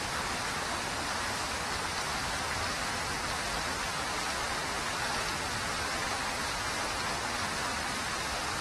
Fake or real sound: real